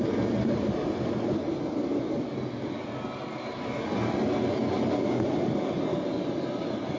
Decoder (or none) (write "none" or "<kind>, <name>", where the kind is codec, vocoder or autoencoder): none